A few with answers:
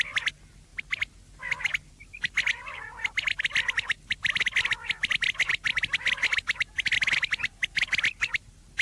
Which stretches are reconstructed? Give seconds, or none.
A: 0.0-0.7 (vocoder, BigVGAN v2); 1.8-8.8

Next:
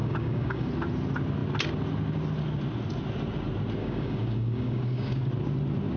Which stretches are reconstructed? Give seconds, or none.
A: 0.0-0.7 (codec, DAC); 3.8-5.3